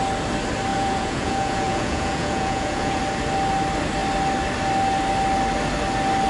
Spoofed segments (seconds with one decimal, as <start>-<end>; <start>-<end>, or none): 0.7-3.0